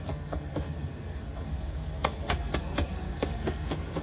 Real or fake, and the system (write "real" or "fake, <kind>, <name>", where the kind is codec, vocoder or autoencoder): fake, codec, SNAC